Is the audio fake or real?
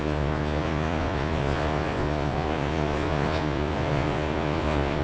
fake